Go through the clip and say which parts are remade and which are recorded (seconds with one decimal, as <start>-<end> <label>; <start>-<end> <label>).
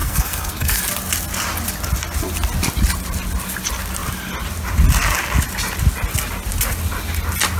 0.0-0.8 remade; 0.8-7.6 recorded